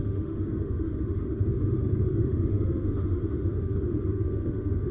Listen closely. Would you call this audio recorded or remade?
remade